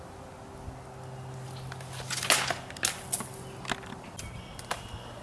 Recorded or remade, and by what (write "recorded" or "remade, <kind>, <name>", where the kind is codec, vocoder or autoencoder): recorded